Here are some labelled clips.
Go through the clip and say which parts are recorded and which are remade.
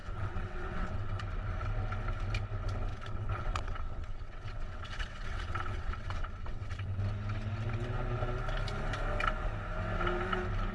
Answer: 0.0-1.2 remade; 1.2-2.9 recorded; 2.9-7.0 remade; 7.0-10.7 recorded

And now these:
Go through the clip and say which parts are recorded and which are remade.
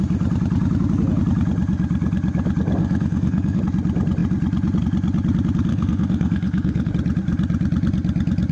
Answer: 0.0-2.8 recorded; 2.8-3.6 remade; 3.6-5.7 recorded; 5.7-6.9 remade; 6.9-8.5 recorded